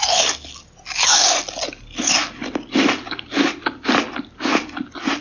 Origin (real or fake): real